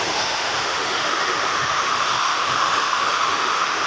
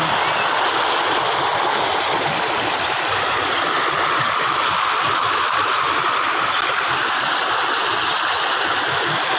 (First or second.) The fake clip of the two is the first